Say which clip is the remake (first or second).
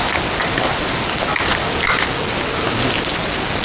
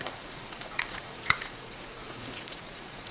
second